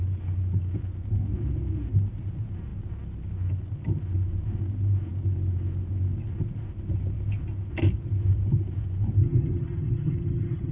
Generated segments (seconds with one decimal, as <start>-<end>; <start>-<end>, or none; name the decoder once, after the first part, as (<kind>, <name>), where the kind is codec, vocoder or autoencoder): 9.2-10.7 (vocoder, HiFi-GAN)